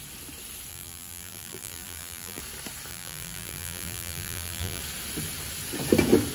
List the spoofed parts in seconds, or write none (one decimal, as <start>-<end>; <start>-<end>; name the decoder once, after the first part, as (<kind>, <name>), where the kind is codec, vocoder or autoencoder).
0.7-2.4 (vocoder, BigVGAN v2); 2.9-4.8

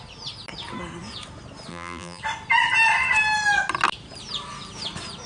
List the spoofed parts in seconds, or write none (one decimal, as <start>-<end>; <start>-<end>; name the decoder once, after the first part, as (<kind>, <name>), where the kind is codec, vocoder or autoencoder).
1.7-2.2 (vocoder, BigVGAN v2)

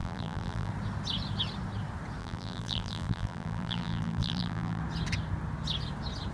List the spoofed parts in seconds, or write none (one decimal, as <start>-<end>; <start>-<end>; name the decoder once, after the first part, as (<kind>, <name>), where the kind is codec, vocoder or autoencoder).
0.0-0.7 (vocoder, BigVGAN v2); 2.2-4.8

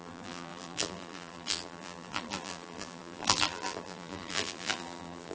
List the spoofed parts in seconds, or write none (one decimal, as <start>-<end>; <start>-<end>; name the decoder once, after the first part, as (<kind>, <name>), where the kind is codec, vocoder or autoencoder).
0.0-5.3 (vocoder, BigVGAN v2)

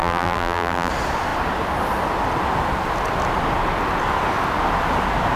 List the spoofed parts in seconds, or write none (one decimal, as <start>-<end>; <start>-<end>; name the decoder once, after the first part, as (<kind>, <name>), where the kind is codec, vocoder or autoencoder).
0.0-0.9 (vocoder, BigVGAN v2)